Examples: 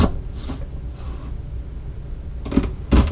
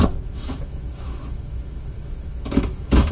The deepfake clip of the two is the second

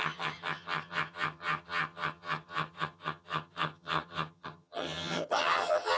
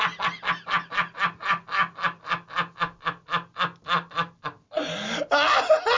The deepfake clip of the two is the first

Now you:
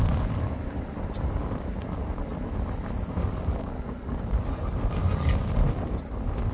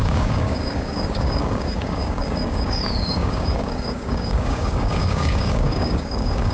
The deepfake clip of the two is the second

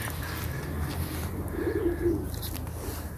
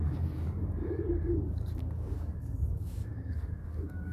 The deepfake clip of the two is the second